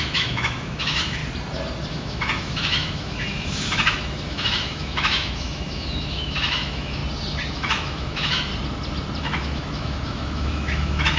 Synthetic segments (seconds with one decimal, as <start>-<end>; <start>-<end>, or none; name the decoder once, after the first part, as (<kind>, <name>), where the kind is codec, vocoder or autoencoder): 0.0-1.2 (autoencoder, DAC-VAE); 1.9-7.0; 7.5-8.5; 9.2-11.2